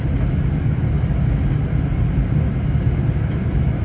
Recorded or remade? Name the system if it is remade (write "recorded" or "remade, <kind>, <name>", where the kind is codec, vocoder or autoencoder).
recorded